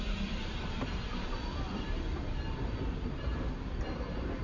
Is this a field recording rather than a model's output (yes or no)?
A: no